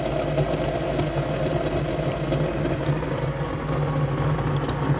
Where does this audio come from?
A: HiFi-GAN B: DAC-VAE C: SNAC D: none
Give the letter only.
D